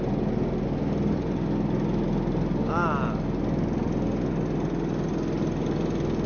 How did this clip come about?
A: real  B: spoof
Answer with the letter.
A